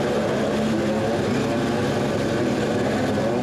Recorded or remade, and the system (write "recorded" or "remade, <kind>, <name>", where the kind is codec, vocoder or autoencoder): recorded